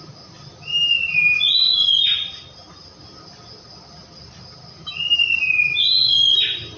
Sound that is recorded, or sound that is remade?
recorded